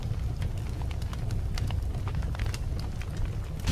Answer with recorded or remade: recorded